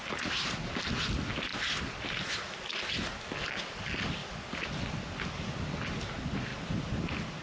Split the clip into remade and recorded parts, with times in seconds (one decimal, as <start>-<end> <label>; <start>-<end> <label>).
0.0-7.4 recorded

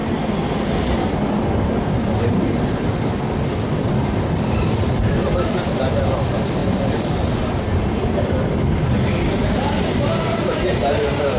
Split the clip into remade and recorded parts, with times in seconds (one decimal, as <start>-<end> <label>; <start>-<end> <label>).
0.0-11.4 recorded

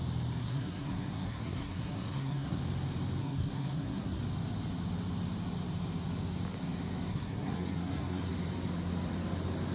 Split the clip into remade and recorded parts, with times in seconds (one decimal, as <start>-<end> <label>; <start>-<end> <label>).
0.0-0.4 recorded; 0.4-2.6 remade; 2.6-3.2 recorded; 3.2-4.2 remade; 4.2-7.1 recorded; 7.1-8.3 remade; 8.3-9.7 recorded

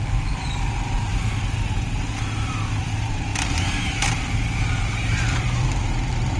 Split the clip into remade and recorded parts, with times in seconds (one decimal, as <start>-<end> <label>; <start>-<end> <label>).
0.0-1.1 remade; 1.1-2.8 recorded; 2.8-6.4 remade

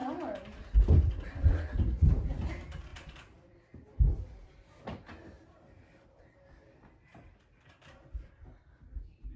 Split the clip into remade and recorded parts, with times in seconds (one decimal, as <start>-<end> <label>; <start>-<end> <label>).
0.0-2.9 recorded; 2.9-4.5 remade; 4.5-9.4 recorded

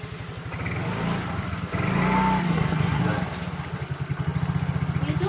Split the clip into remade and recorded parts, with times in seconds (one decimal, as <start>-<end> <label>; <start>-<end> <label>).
0.0-2.4 recorded; 2.4-3.0 remade; 3.0-5.3 recorded